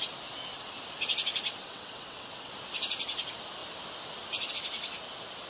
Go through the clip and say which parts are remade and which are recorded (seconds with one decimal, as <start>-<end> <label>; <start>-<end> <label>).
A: 0.0-1.6 recorded; 1.6-2.5 remade; 2.5-5.5 recorded